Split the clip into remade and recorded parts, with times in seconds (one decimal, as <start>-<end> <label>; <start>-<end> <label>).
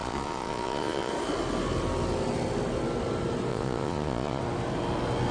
0.0-1.1 remade; 1.1-3.5 recorded; 3.5-4.4 remade; 4.4-5.3 recorded